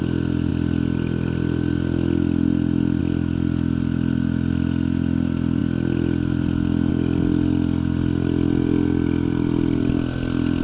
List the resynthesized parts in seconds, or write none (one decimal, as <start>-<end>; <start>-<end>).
none